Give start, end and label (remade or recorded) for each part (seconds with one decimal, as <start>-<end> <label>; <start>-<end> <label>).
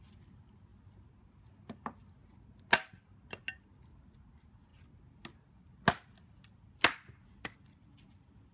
0.0-8.5 recorded